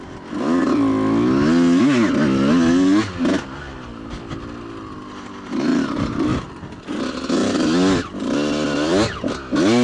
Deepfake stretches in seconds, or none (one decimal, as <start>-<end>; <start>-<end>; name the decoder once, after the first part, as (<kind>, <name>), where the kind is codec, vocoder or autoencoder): 5.7-6.8 (vocoder, BigVGAN v2); 7.4-9.3